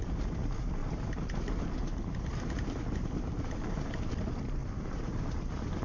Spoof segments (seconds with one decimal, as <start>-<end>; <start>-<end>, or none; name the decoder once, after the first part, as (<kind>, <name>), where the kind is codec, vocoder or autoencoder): 0.8-4.1 (vocoder, BigVGAN v2); 4.6-5.3